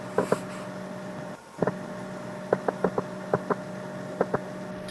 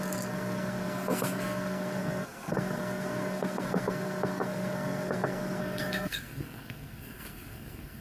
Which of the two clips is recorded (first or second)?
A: first